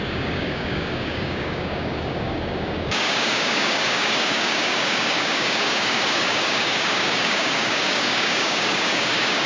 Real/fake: fake